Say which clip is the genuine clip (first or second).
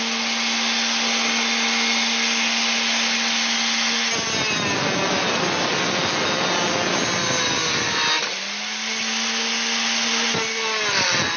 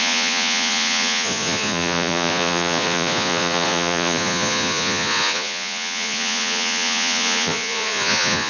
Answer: first